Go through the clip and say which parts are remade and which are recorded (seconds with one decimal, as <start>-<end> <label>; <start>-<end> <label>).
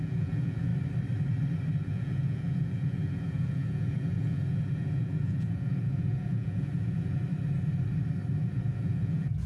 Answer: 0.0-0.7 remade; 0.7-1.8 recorded; 1.8-7.2 remade; 7.2-8.3 recorded; 8.3-9.5 remade